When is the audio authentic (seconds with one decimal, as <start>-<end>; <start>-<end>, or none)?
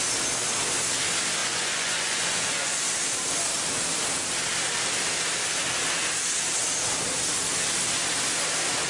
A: 0.0-1.4; 2.8-8.9